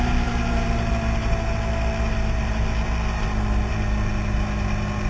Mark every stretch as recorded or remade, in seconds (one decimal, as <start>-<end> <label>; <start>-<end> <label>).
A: 0.0-5.1 recorded